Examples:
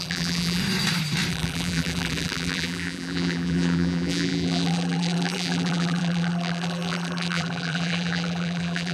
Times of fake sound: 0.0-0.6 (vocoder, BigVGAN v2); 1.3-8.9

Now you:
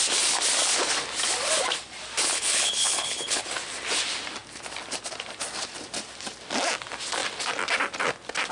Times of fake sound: 2.3-3.4 (codec, HILCodec)

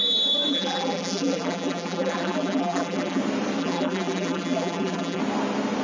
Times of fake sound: 0.5-3.2 (vocoder, BigVGAN v2); 3.6-5.2

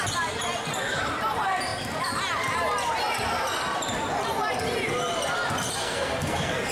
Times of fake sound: 5.8-6.7 (codec, SNAC)

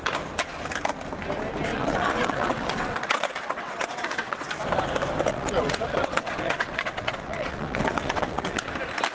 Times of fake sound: 1.7-4.5 (vocoder, WaveNeXt); 5.3-8.7

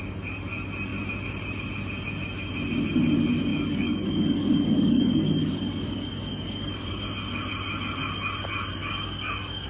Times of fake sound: 3.5-7.0 (codec, DAC); 8.8-9.7